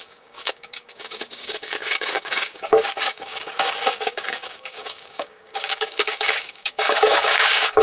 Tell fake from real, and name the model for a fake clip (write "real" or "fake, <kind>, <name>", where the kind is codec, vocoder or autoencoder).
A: fake, codec, DAC